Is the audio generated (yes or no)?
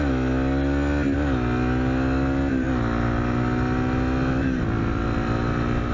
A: no